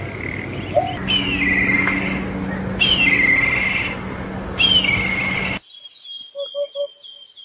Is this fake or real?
real